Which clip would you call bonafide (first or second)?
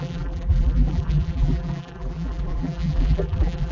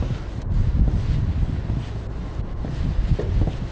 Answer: second